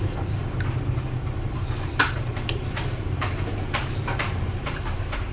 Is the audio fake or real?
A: fake